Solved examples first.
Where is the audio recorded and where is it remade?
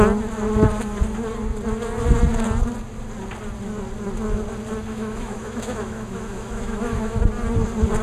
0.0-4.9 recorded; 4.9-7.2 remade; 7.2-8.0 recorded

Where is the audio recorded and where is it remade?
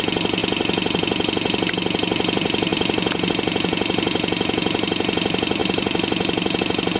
0.0-7.0 recorded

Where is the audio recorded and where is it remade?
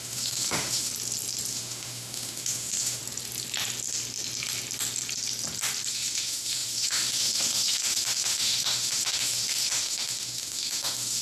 0.0-0.9 remade; 0.9-1.5 recorded; 1.5-3.0 remade; 3.0-5.9 recorded; 5.9-11.2 remade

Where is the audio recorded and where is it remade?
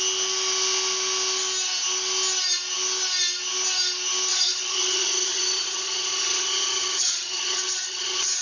0.0-4.3 recorded; 4.3-8.4 remade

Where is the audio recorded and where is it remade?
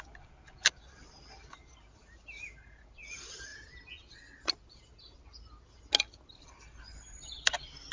0.0-3.5 remade; 3.5-6.4 recorded; 6.4-7.9 remade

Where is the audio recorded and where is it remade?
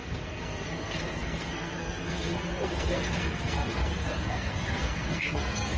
0.0-5.8 remade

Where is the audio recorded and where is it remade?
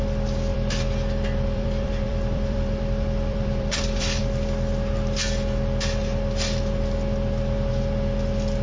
0.0-0.5 recorded; 0.5-4.2 remade; 4.2-8.6 recorded